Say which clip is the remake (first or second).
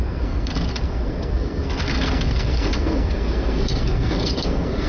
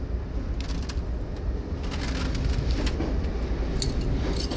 first